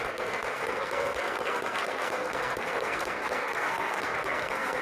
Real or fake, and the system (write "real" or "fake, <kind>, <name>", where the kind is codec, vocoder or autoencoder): fake, codec, SNAC